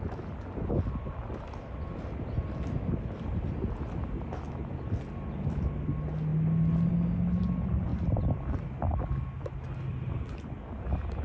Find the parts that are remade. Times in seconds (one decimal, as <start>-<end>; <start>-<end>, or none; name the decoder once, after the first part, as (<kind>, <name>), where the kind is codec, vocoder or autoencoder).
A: none